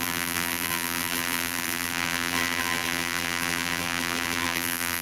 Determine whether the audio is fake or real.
fake